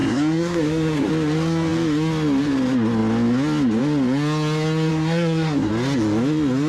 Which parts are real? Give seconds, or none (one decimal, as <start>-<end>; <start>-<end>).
1.1-4.9; 5.7-6.7

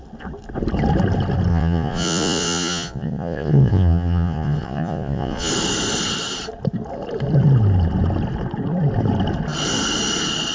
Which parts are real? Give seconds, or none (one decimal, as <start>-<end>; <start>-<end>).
0.0-1.5; 5.5-10.5

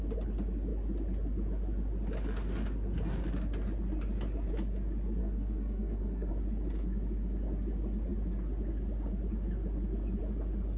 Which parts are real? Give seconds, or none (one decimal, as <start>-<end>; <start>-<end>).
0.0-5.2; 6.3-10.8

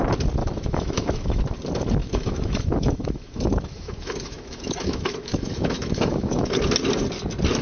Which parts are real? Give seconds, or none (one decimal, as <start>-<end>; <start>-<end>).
0.0-0.4; 1.4-2.0; 6.6-7.6

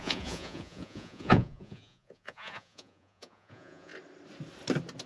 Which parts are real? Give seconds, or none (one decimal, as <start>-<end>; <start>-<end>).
3.9-5.1

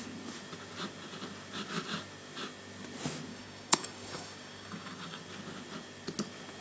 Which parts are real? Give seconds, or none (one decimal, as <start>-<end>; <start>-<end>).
0.0-3.3; 5.2-6.6